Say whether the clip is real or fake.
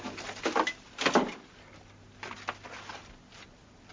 real